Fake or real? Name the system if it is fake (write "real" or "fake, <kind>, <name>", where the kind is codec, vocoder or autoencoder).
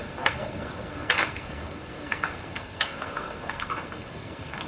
fake, codec, SNAC